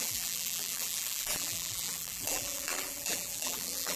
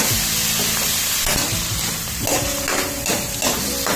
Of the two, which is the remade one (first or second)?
first